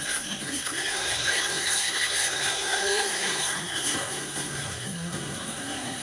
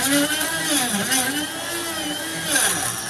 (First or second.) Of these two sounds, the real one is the second